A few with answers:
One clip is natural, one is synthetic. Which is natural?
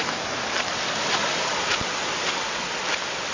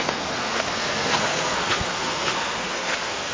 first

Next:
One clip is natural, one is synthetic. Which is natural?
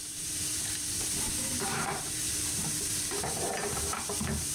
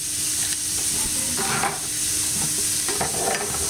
second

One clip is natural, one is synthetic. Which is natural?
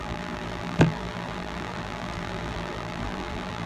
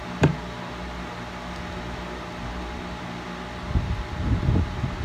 second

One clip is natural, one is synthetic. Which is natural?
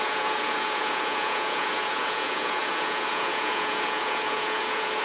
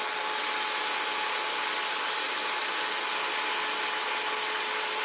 second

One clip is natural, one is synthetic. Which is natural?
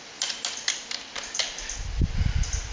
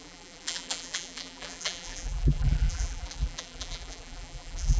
first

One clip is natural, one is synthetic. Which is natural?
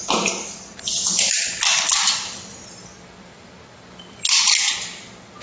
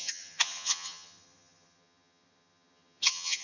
first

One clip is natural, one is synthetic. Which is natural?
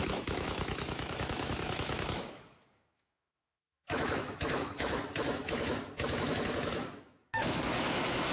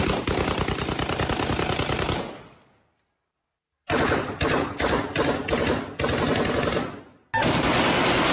second